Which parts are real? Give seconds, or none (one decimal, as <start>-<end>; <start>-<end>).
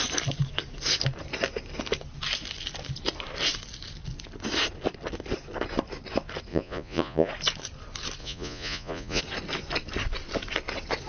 0.0-6.5; 7.3-8.2; 9.2-11.1